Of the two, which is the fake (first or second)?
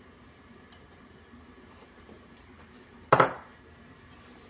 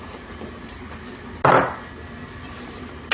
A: first